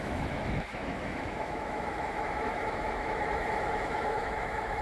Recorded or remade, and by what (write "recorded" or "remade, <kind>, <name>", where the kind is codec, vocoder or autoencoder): remade, autoencoder, DAC-VAE